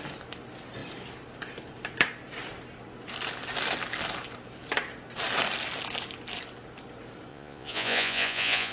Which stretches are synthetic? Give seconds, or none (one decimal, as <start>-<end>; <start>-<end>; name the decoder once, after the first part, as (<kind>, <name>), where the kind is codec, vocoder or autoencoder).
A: 7.3-8.7 (vocoder, Vocos)